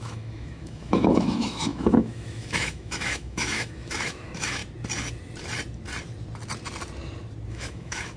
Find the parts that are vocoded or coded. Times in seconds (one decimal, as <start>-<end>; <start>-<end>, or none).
0.0-4.6; 7.5-8.2